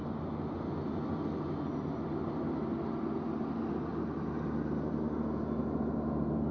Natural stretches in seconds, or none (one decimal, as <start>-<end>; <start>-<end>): 0.0-6.5